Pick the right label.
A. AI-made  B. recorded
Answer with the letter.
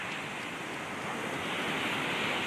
B